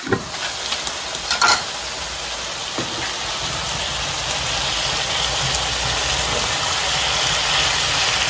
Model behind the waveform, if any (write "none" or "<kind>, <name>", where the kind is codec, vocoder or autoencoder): none